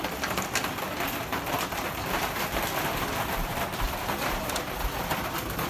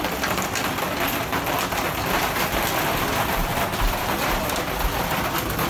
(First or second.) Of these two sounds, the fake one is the first